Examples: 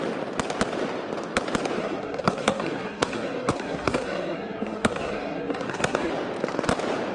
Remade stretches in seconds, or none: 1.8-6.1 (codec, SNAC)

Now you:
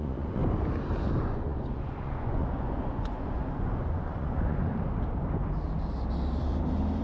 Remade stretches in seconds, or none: 0.0-0.4 (vocoder, Vocos); 1.2-4.7

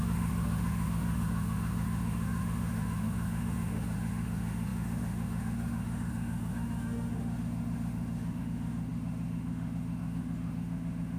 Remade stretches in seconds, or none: 0.0-11.2 (autoencoder, DAC-VAE)

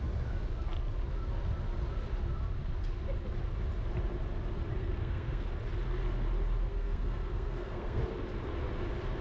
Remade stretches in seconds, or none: 4.8-5.5 (codec, SNAC); 6.7-8.0

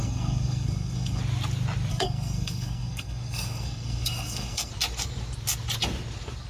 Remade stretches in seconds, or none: 0.0-1.2 (codec, SNAC); 1.9-4.7

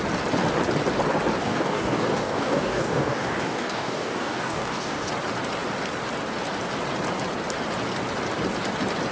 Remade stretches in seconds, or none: 1.4-5.1 (codec, DAC)